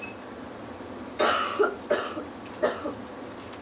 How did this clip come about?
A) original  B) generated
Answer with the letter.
A